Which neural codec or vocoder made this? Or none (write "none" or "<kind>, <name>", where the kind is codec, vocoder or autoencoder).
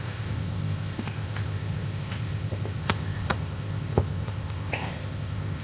codec, ZipCodec